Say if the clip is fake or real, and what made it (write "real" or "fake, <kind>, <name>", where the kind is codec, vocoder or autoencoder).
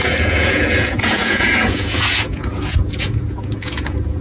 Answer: fake, vocoder, Vocos